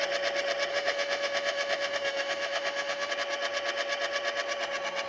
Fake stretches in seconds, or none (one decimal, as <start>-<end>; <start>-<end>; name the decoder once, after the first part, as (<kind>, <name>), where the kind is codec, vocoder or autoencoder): 0.7-3.1 (autoencoder, DAC-VAE)

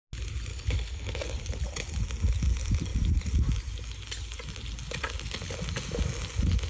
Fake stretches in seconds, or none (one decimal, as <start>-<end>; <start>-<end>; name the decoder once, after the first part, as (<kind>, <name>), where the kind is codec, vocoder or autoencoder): 0.5-1.4 (codec, HILCodec)

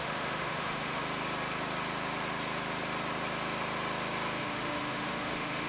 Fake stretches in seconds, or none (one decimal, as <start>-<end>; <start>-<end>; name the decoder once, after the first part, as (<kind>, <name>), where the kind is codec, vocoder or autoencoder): 0.0-1.0 (autoencoder, DAC-VAE); 4.4-5.7

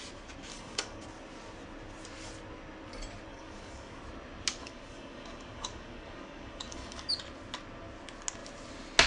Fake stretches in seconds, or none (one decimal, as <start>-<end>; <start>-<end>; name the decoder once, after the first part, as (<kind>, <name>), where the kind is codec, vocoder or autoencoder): 0.5-1.0 (codec, DAC); 3.3-4.0; 4.6-7.1

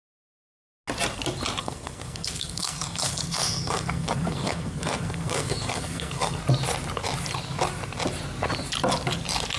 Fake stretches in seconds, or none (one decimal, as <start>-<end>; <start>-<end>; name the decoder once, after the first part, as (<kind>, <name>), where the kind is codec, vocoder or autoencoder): 1.6-6.4 (codec, SNAC)

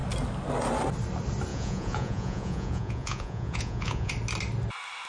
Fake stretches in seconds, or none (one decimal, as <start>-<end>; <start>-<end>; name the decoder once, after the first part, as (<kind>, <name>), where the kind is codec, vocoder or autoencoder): 1.5-4.1 (vocoder, Vocos)

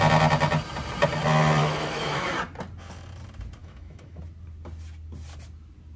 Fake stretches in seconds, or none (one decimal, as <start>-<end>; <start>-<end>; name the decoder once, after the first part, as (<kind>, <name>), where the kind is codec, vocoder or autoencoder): 1.6-2.3 (autoencoder, DAC-VAE); 3.6-4.2